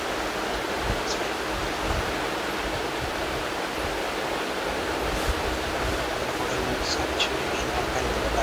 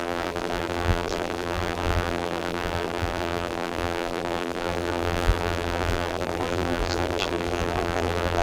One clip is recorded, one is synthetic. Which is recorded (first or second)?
first